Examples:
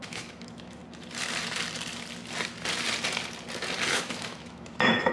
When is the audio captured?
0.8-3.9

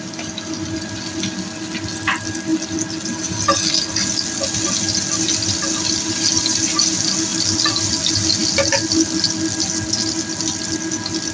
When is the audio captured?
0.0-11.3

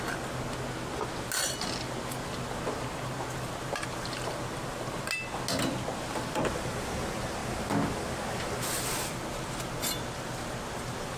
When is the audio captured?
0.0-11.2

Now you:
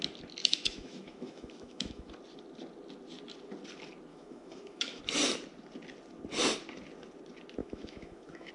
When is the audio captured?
0.0-0.4; 2.1-4.1; 5.0-7.6

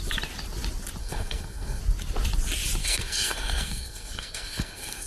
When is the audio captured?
0.0-1.0; 1.8-2.8

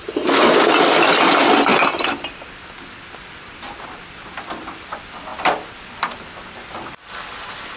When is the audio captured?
0.0-7.8